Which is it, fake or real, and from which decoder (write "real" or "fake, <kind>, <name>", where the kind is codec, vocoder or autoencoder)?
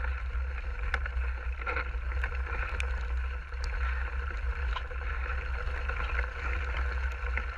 real